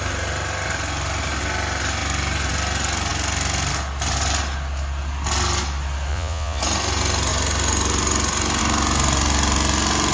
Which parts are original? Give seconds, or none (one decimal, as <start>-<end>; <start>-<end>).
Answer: 0.0-6.1; 6.6-10.1